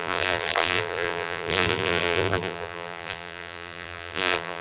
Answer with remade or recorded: remade